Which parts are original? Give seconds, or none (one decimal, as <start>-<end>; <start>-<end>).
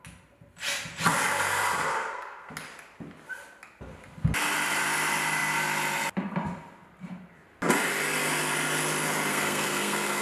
0.0-1.9; 2.5-9.3